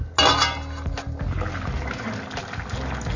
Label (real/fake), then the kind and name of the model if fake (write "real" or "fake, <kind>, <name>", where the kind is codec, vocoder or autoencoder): real